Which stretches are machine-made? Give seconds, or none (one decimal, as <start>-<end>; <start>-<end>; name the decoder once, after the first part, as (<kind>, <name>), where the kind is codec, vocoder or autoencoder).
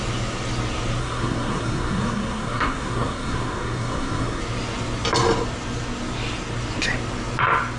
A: 1.0-4.4 (codec, SNAC)